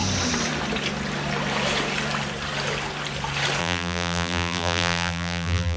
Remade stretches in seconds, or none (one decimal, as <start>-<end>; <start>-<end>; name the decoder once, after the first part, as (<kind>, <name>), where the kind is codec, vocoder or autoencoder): 3.6-5.8 (vocoder, BigVGAN v2)